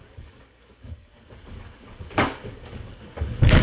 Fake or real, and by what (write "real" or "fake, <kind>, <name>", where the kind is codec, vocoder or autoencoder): fake, codec, DAC